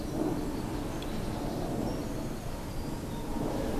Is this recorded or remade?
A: recorded